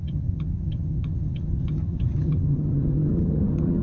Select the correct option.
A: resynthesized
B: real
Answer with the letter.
A